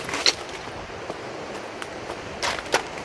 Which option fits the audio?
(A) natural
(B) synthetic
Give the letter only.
A